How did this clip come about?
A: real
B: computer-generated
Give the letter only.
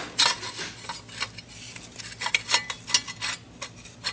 A